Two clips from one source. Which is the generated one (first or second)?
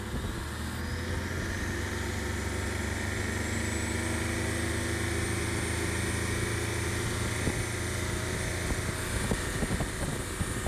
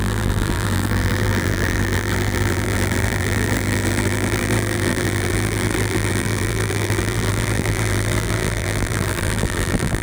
second